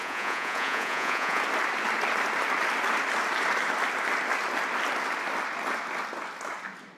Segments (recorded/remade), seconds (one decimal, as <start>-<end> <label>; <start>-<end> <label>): 0.0-1.4 remade; 1.4-7.0 recorded